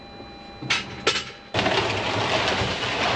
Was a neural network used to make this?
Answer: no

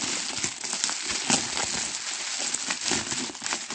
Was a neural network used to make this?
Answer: no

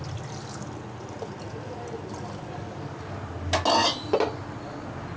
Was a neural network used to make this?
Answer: no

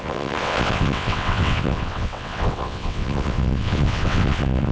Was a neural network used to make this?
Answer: yes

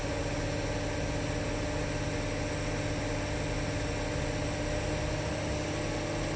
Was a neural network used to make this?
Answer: no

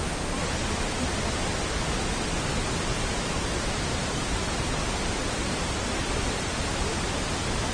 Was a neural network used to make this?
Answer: no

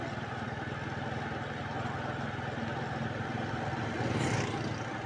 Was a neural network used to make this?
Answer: no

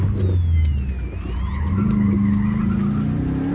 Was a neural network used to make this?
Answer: no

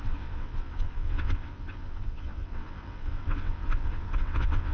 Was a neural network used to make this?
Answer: yes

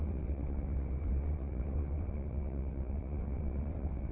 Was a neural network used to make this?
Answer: yes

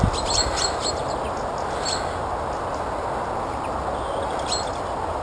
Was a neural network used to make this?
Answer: no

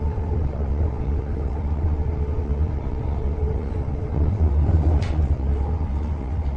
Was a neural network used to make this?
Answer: yes